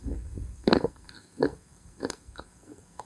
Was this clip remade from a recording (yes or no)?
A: yes